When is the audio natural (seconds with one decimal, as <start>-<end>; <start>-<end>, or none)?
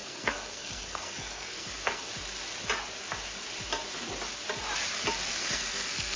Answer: 2.1-5.4